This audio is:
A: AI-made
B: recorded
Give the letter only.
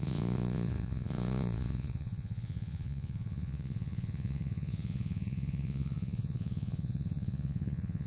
A